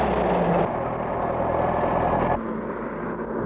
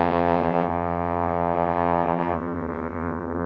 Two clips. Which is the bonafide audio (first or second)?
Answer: first